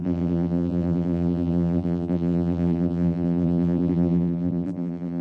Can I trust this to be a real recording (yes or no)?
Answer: no